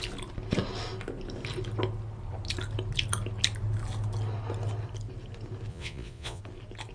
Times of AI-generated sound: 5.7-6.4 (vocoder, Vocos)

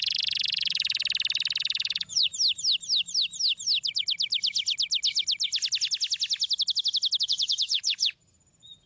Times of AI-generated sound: 0.0-1.0 (vocoder, Vocos); 1.6-2.3; 7.2-8.9

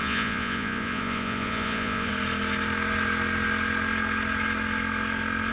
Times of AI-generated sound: 0.0-2.1 (vocoder, Vocos)

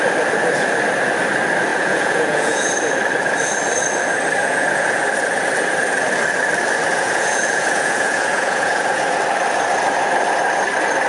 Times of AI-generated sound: 1.7-2.7 (vocoder, Vocos); 4.4-5.0; 6.9-9.2

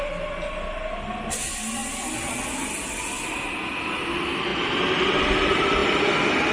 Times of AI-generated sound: none

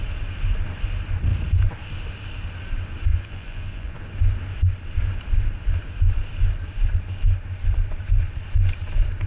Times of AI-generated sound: 3.1-4.0 (vocoder, Vocos)